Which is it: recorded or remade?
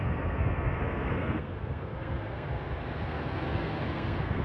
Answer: remade